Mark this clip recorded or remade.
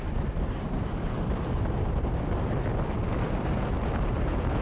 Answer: recorded